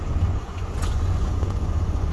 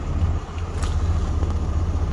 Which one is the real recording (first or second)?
second